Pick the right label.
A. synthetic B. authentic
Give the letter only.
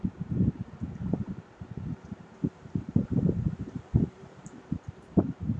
A